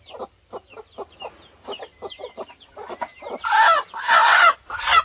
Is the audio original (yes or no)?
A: yes